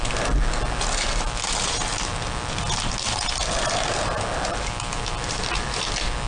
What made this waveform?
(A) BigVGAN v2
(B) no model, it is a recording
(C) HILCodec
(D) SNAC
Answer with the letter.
B